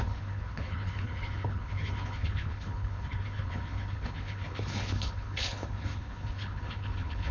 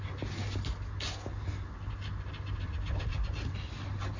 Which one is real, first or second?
second